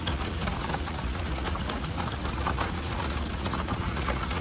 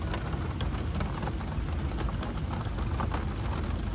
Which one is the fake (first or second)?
first